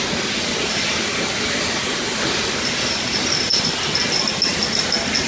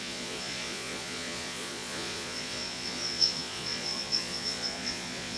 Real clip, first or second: first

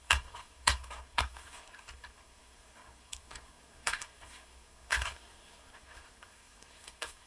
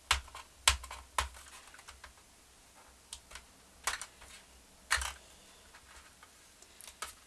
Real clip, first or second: second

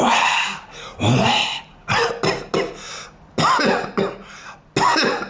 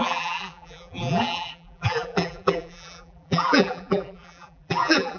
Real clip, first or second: first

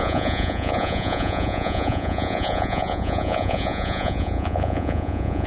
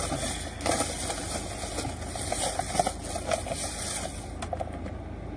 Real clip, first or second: second